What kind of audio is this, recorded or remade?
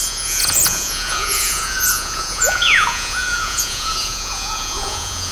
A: remade